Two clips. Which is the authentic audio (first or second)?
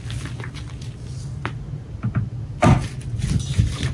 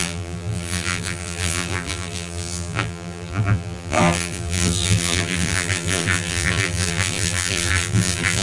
first